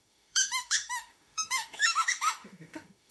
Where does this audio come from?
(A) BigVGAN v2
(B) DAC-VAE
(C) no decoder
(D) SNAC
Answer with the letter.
B